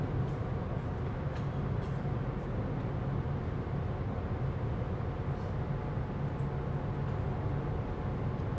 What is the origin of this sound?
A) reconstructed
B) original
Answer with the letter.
B